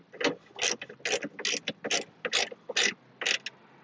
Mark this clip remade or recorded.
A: recorded